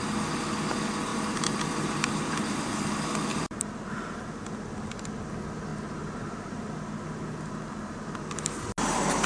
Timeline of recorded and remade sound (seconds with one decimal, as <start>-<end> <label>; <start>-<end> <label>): 0.0-1.1 recorded; 1.1-2.6 remade; 2.6-3.3 recorded; 3.3-3.9 remade; 3.9-9.3 recorded